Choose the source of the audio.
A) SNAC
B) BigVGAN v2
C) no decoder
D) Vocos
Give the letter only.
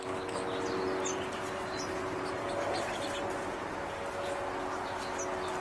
C